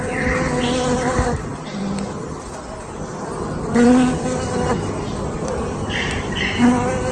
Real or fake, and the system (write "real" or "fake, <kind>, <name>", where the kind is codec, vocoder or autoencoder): real